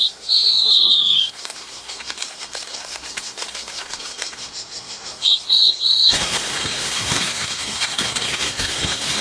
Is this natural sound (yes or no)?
no